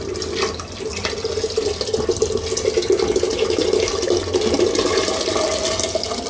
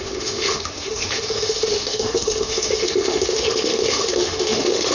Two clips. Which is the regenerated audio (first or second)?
second